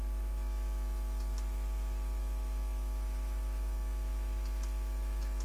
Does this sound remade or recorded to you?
remade